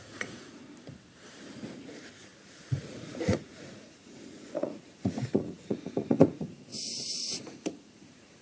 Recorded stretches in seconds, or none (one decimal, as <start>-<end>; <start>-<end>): 0.6-1.9; 6.7-7.4